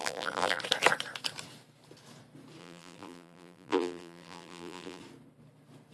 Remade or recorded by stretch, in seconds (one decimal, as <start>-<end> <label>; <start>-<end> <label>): 0.0-0.6 remade; 0.6-2.6 recorded; 2.6-5.0 remade; 5.0-5.9 recorded